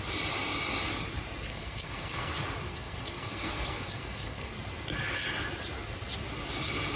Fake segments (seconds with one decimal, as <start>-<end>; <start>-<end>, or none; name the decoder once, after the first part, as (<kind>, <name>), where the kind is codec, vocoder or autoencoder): 1.5-2.3 (codec, SNAC); 2.7-4.5